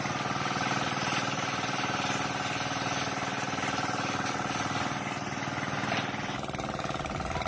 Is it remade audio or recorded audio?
recorded